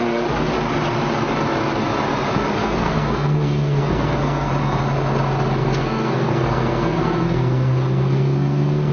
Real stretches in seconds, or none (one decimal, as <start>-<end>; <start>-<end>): 0.0-2.6; 4.5-5.6